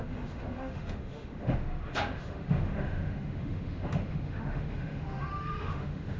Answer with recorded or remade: remade